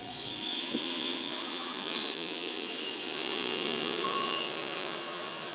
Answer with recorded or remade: remade